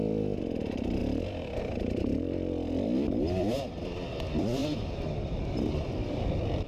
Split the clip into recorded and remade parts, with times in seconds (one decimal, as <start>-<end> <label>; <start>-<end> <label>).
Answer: 0.0-1.0 remade; 1.0-1.6 recorded; 1.6-6.7 remade